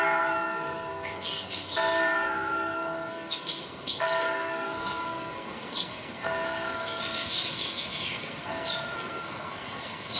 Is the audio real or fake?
fake